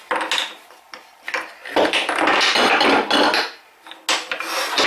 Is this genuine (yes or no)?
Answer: yes